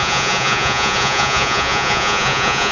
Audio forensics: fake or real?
fake